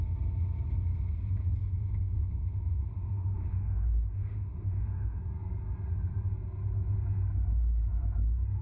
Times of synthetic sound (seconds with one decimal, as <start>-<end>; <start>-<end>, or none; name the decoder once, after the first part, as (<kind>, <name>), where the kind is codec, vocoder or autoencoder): 1.6-5.2 (autoencoder, DAC-VAE)